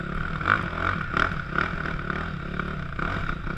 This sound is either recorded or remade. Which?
recorded